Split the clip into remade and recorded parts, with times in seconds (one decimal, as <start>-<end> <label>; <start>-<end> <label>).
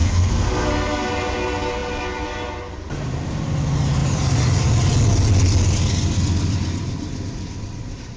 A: 0.0-1.1 remade; 1.1-8.2 recorded